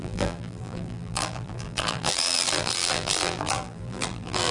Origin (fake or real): fake